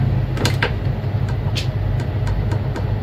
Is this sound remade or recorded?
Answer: recorded